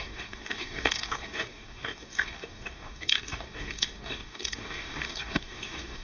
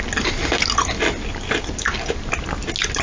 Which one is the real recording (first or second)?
second